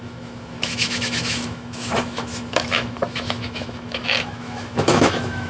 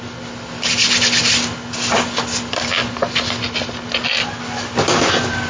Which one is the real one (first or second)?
second